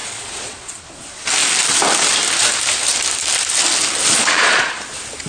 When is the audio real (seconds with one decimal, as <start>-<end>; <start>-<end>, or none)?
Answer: 0.8-4.0; 4.8-5.3